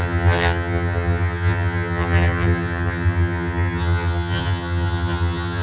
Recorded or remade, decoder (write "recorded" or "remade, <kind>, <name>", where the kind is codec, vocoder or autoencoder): remade, vocoder, HiFi-GAN